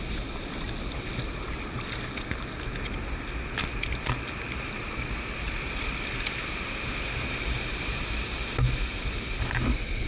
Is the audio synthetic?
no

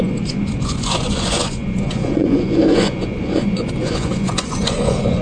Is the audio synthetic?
yes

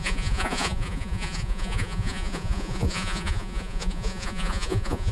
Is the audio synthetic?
yes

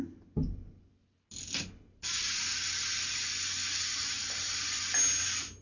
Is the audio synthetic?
no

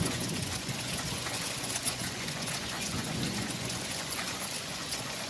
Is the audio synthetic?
yes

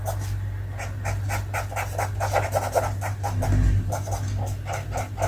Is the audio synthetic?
no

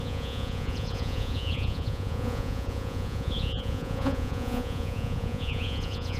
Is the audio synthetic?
yes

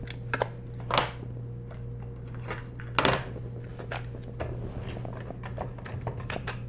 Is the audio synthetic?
no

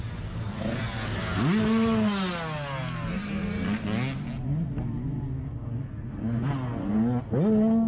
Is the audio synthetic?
no